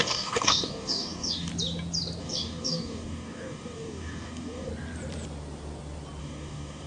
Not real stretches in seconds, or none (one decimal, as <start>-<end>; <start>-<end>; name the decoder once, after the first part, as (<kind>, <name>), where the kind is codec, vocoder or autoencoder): 0.0-1.5 (codec, DAC); 2.2-4.7; 6.2-6.9